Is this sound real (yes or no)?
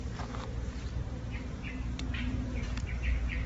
no